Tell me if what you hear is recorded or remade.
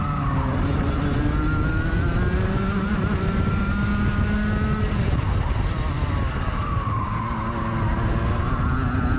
recorded